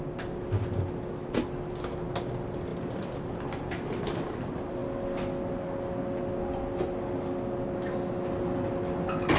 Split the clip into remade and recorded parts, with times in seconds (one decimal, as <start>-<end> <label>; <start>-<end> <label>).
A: 0.0-9.4 recorded